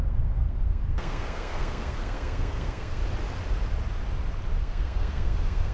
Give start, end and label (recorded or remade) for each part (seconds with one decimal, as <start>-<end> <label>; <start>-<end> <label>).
0.0-3.0 remade; 3.0-4.6 recorded; 4.6-5.7 remade